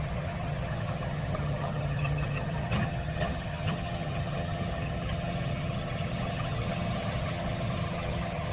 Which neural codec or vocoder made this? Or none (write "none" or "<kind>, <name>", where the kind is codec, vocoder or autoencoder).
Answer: vocoder, HiFi-GAN